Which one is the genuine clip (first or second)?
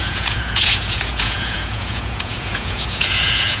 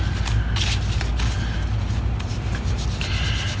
second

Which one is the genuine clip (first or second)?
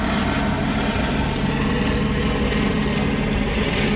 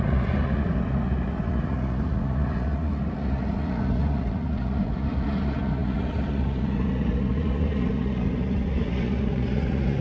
first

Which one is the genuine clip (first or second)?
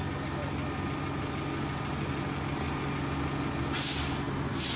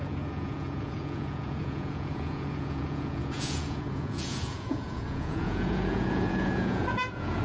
first